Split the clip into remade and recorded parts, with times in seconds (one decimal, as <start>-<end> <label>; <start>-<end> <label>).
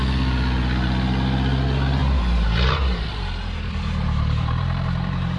0.0-2.0 recorded; 2.0-5.4 remade